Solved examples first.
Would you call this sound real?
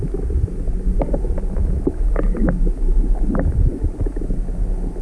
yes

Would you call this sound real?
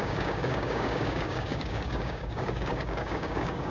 no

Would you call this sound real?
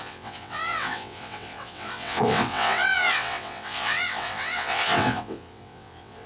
no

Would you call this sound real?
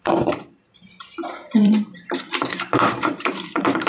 no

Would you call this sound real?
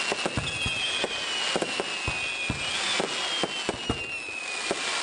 yes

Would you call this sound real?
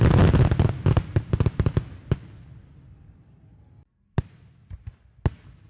yes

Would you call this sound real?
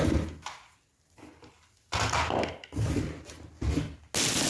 yes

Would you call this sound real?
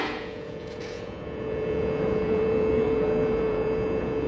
no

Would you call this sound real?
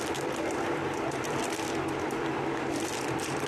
no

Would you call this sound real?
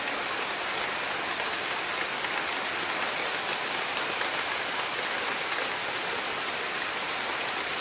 yes